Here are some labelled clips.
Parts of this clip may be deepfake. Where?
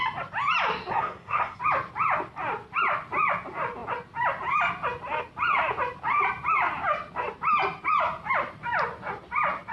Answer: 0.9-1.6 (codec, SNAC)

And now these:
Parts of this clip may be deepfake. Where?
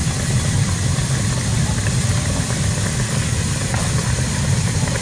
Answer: none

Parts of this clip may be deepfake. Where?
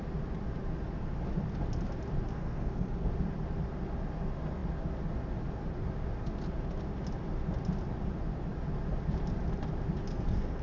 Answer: 2.3-3.1 (codec, SNAC); 10.1-10.6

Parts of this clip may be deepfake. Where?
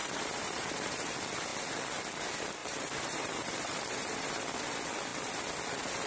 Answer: 0.0-1.1 (vocoder, BigVGAN v2); 2.6-4.5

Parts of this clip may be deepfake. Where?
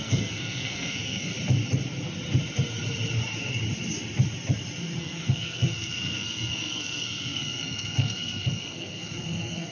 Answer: 0.0-1.3 (codec, SNAC); 5.0-9.7